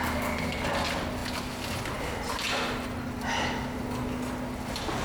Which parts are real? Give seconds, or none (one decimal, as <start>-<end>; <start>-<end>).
0.0-5.0